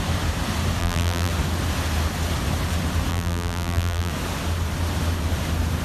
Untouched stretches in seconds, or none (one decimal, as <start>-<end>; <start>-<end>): 0.0-0.8; 1.3-3.1; 4.1-5.8

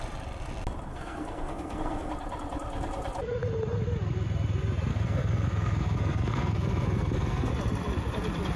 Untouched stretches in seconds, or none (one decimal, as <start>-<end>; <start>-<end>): 0.0-0.9; 2.1-4.9; 7.5-8.6

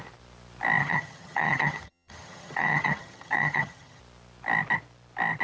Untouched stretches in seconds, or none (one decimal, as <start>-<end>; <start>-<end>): 0.0-0.8; 4.0-5.4

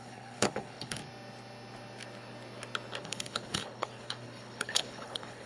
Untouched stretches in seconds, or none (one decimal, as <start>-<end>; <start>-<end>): 1.0-3.0

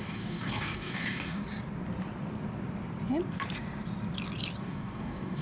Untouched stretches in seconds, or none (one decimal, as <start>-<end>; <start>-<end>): 1.4-4.6

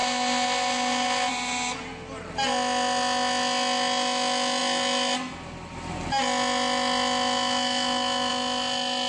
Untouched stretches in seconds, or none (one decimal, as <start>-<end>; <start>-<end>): 0.0-9.1